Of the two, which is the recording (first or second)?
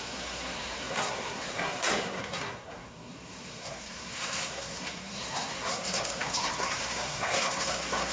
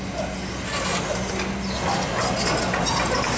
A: second